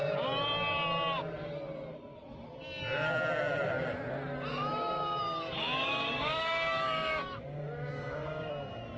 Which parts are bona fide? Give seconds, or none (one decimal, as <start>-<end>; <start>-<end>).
0.0-4.5; 8.5-9.0